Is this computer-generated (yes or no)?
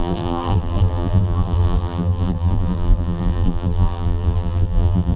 yes